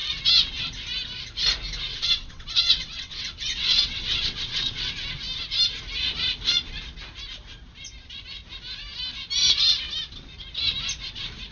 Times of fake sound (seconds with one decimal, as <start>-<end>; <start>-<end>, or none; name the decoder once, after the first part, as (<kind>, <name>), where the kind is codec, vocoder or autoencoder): 1.9-4.9 (vocoder, WaveNeXt)